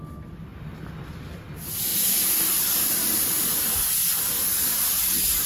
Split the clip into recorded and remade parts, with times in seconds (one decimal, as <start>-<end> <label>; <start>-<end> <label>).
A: 0.0-5.5 recorded